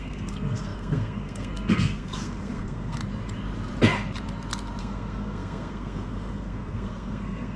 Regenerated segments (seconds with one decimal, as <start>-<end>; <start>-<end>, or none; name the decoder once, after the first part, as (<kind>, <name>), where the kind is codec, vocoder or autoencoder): 0.0-3.0 (codec, SNAC); 4.8-7.6